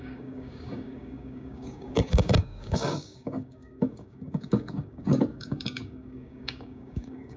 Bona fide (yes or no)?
no